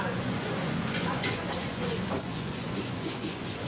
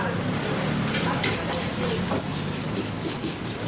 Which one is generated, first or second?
first